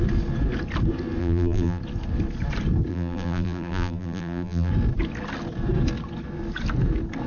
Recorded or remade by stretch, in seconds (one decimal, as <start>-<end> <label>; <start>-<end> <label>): 0.0-1.2 recorded; 1.2-1.8 remade; 1.8-2.9 recorded; 2.9-4.7 remade; 4.7-7.3 recorded